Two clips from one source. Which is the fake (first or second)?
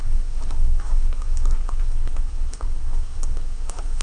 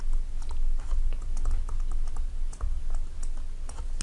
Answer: first